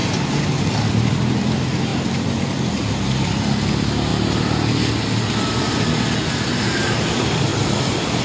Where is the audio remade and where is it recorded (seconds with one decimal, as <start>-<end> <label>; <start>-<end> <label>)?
0.0-1.4 remade; 1.4-4.1 recorded; 4.1-5.8 remade; 5.8-7.5 recorded; 7.5-8.2 remade